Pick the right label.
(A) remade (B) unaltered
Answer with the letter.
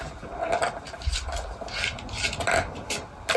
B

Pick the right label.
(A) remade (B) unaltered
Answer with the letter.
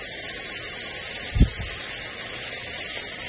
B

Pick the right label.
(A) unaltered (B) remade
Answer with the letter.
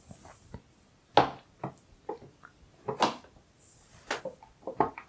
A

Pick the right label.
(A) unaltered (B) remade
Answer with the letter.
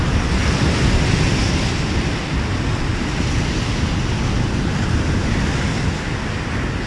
A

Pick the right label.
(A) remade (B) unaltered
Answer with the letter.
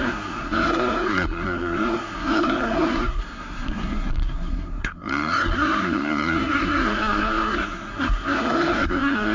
A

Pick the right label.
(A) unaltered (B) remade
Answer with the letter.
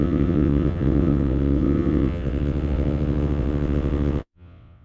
B